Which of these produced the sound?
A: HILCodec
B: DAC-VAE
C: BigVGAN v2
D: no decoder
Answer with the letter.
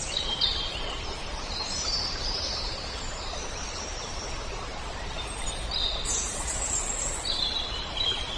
C